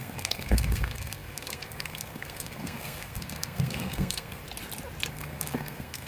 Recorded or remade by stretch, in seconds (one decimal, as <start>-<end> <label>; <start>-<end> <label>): 0.0-4.4 remade; 4.4-5.1 recorded; 5.1-6.1 remade